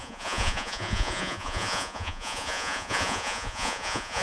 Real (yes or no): no